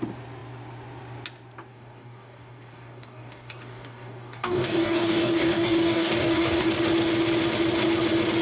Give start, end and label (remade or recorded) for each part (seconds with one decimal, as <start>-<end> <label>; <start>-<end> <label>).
0.0-1.7 recorded; 1.7-6.7 remade; 6.7-8.4 recorded